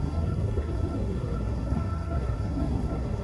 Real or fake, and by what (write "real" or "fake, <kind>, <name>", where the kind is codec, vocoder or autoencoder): fake, codec, SNAC